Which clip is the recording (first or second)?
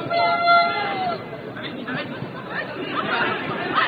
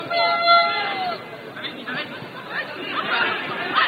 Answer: second